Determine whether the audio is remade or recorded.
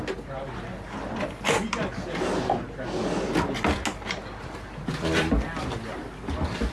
recorded